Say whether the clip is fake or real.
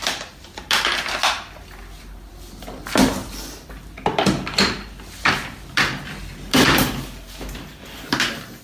real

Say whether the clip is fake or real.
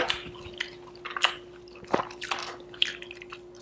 real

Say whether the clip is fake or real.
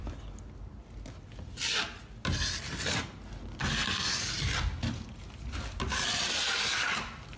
real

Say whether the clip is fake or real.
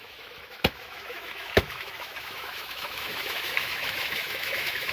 fake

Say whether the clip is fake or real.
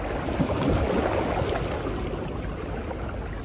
real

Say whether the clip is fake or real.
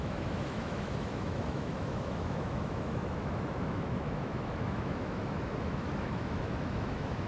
fake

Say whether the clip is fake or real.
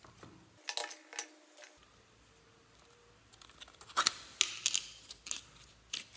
real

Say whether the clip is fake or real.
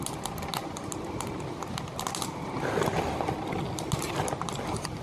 real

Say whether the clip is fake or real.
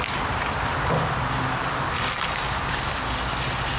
real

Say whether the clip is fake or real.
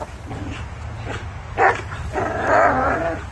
real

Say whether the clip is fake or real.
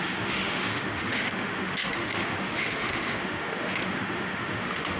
fake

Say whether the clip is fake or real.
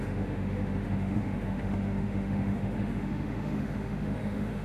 fake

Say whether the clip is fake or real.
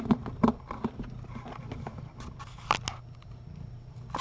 real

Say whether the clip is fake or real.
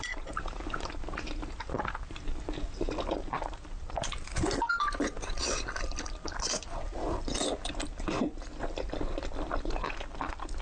real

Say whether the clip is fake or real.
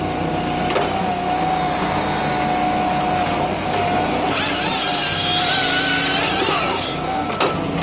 real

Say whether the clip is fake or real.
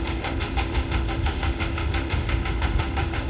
fake